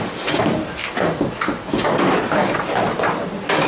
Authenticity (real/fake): real